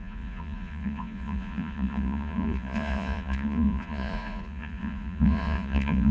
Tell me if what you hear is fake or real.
fake